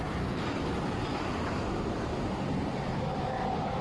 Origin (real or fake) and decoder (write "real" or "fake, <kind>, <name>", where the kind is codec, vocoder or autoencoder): real